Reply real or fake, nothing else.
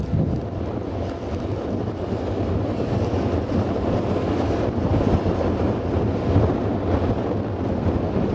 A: real